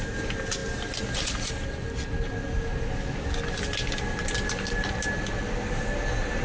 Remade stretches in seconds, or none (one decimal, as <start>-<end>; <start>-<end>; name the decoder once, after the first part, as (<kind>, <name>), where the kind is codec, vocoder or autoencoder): none